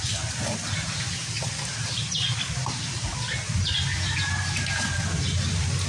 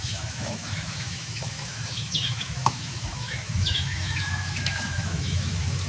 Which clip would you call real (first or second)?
first